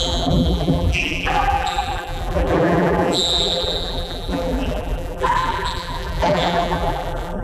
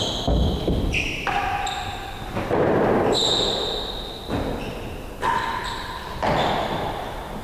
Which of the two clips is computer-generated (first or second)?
first